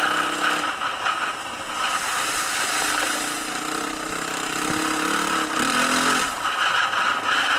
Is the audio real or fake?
real